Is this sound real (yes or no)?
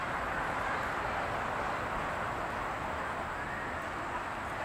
yes